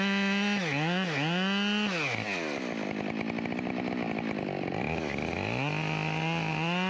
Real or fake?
real